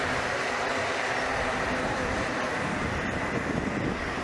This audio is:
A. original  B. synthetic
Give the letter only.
B